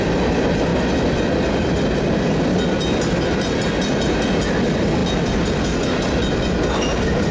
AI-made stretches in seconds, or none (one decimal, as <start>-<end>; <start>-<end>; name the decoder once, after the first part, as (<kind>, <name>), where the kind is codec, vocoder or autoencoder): none